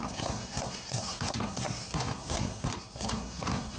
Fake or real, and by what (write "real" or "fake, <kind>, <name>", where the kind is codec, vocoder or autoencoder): fake, codec, SNAC